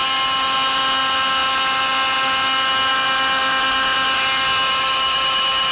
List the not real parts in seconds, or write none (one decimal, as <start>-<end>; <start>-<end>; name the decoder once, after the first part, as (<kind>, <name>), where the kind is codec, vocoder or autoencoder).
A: none